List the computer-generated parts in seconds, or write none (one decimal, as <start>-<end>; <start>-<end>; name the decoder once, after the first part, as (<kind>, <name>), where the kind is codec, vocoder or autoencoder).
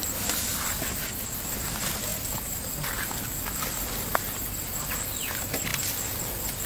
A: none